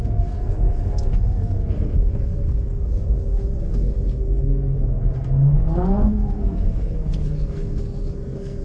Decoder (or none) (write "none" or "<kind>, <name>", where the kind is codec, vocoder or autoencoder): codec, SNAC